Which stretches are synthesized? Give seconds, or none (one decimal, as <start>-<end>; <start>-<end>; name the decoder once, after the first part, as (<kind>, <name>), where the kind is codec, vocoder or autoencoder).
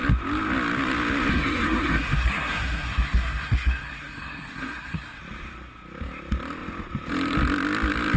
1.3-5.2 (codec, SNAC)